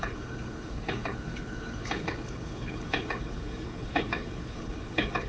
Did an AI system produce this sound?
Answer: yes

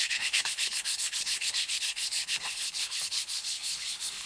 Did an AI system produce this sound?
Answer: yes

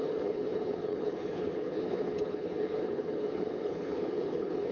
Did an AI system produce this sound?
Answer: yes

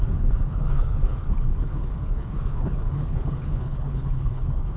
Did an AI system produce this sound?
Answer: yes